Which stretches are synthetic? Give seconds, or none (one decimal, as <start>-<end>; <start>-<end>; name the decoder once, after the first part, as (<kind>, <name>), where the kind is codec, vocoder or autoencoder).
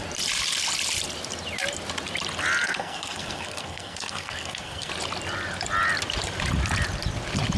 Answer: 2.6-4.9 (codec, SNAC)